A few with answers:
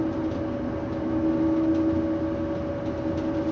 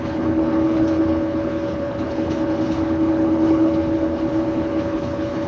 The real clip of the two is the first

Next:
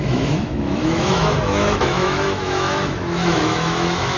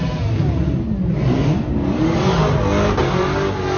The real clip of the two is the second